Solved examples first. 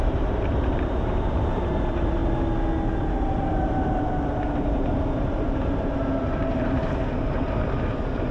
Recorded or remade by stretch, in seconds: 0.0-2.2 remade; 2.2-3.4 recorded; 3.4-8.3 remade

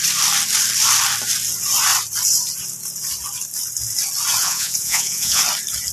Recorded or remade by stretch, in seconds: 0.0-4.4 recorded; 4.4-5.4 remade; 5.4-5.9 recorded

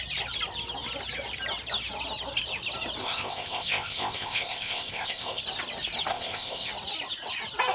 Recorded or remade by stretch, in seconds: 0.0-3.0 recorded; 3.0-5.4 remade; 5.4-6.1 recorded; 6.1-6.7 remade; 6.7-7.7 recorded